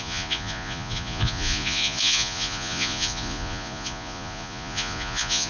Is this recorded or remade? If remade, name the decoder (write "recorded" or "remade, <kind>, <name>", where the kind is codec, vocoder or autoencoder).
remade, vocoder, Vocos